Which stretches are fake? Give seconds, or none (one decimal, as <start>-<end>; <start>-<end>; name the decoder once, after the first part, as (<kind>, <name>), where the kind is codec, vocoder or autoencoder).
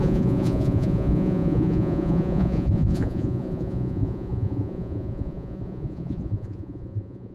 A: 0.0-7.3 (vocoder, Vocos)